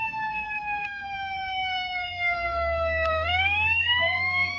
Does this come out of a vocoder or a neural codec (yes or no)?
yes